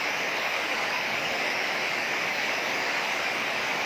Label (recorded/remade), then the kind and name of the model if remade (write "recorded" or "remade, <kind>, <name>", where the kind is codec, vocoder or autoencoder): remade, codec, DAC